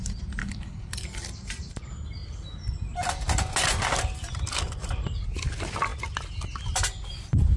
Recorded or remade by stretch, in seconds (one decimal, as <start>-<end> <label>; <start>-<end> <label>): 0.0-0.4 recorded; 0.4-0.9 remade; 0.9-7.6 recorded